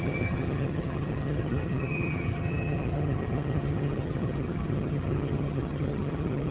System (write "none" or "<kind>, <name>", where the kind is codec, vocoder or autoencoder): vocoder, HiFi-GAN